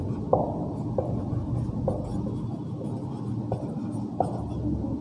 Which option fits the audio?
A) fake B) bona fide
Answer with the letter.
B